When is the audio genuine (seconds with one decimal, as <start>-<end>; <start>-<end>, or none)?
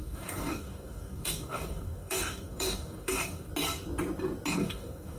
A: 3.5-4.5